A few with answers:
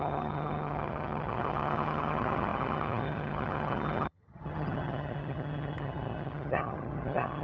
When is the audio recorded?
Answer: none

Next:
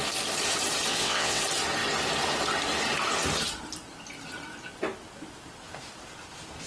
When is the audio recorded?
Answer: 0.0-0.9; 1.4-6.7

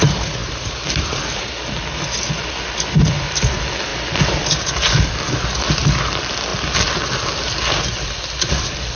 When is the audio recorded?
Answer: 0.0-0.4; 1.4-9.0

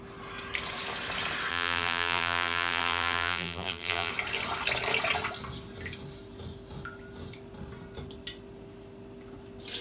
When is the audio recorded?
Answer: 0.0-1.5; 4.1-9.8

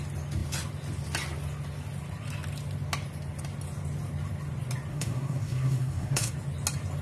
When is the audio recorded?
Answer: 0.0-4.9; 6.3-7.0

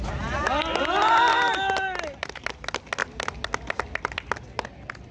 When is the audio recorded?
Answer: 0.0-5.1

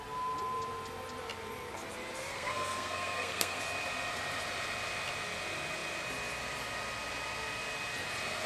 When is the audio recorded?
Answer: 0.0-2.3; 3.6-8.5